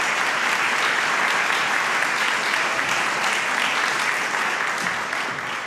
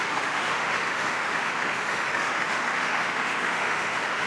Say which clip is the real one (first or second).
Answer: first